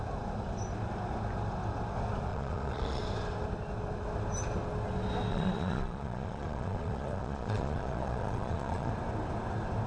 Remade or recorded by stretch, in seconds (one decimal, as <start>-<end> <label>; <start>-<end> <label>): 0.0-2.3 recorded; 2.3-3.0 remade; 3.0-5.3 recorded; 5.3-8.9 remade; 8.9-9.9 recorded